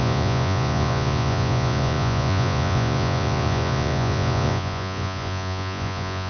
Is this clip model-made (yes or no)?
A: yes